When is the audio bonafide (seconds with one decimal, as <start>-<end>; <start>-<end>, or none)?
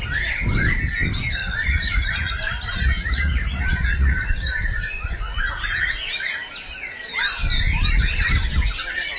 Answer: 0.0-1.4; 6.3-9.2